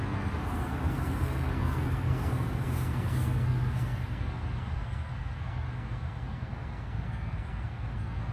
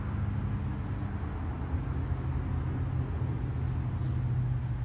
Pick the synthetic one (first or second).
first